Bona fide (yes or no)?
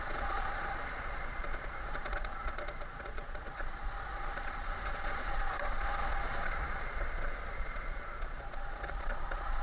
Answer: no